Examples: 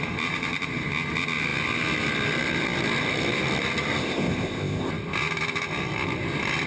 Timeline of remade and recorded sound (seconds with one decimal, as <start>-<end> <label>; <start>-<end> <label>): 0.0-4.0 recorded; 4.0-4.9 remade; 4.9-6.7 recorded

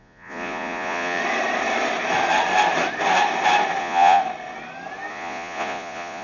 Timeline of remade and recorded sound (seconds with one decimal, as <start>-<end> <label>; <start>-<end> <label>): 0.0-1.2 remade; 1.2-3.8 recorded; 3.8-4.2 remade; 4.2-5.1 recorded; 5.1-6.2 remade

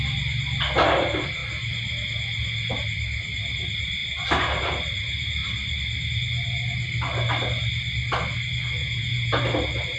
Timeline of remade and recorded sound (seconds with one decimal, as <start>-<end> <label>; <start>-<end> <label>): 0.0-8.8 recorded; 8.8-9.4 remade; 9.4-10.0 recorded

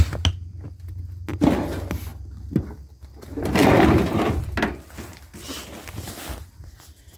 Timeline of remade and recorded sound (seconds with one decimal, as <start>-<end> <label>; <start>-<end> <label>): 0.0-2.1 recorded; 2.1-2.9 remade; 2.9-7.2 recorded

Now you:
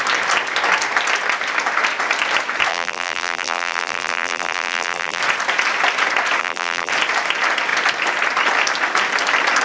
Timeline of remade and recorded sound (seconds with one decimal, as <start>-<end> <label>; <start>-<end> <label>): 0.0-2.7 recorded; 2.7-5.2 remade; 5.2-6.4 recorded; 6.4-6.9 remade; 6.9-9.6 recorded

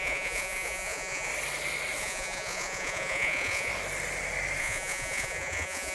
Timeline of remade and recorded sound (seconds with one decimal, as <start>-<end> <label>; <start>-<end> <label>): 0.0-1.3 remade; 1.3-2.0 recorded; 2.0-3.7 remade; 3.7-4.6 recorded; 4.6-5.9 remade

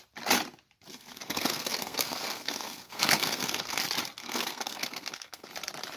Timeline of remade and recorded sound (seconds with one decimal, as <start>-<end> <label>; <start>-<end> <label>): 0.0-0.9 recorded; 0.9-3.8 remade; 3.8-4.2 recorded; 4.2-5.5 remade; 5.5-6.0 recorded